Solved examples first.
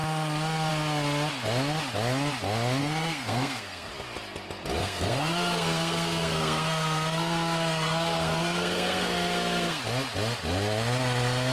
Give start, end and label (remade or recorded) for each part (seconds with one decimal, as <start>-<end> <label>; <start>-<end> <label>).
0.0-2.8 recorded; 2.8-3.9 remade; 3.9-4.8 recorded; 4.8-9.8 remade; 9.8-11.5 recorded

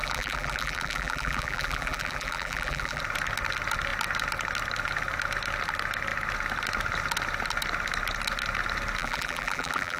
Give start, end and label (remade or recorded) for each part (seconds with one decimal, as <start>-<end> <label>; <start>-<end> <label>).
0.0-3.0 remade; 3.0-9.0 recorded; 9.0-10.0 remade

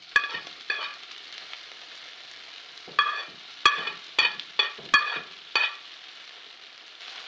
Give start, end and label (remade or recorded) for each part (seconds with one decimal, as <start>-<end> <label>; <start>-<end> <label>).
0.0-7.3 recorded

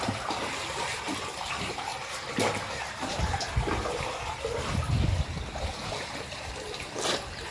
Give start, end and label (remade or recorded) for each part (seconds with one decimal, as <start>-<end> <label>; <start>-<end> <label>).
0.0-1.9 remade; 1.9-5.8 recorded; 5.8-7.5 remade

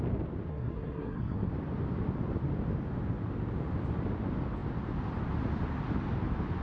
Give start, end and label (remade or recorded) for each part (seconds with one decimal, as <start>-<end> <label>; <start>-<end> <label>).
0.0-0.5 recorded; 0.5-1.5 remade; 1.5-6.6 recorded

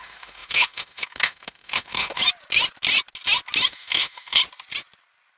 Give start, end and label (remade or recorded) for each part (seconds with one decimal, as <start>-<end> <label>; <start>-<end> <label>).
0.0-2.2 remade; 2.2-3.7 recorded; 3.7-4.4 remade; 4.4-5.4 recorded

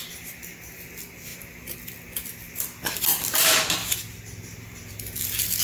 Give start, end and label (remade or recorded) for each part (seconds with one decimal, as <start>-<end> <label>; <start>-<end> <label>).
0.0-3.8 remade; 3.8-4.4 recorded; 4.4-5.6 remade